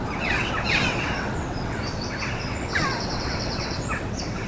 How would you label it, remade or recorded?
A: remade